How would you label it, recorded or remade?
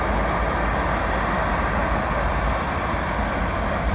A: recorded